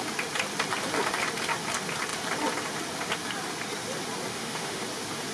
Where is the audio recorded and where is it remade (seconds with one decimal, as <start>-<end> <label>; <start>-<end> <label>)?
0.0-4.3 recorded; 4.3-4.8 remade; 4.8-5.3 recorded